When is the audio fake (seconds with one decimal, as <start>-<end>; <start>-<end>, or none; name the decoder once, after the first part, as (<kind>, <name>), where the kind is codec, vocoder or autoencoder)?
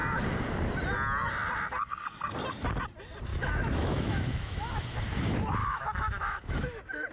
3.3-5.0 (autoencoder, DAC-VAE); 5.6-7.1